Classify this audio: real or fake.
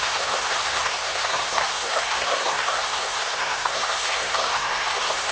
fake